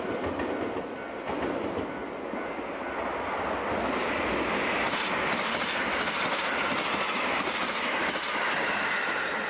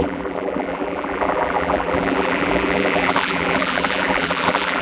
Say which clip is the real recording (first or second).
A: first